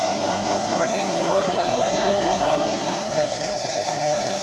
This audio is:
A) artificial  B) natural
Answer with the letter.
A